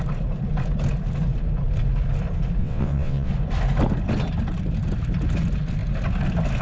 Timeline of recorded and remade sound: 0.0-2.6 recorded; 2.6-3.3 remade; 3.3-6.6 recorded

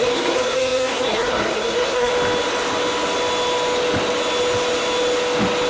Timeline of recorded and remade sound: 0.0-2.1 remade; 2.1-5.7 recorded